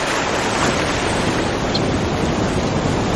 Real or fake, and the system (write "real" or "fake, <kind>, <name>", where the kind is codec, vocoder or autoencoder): real